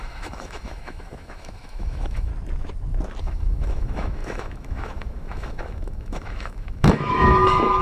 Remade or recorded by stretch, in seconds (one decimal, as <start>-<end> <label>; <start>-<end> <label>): 0.0-2.3 remade; 2.3-3.2 recorded; 3.2-7.8 remade